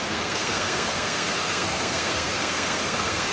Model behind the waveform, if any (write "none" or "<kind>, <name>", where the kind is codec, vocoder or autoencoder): codec, SNAC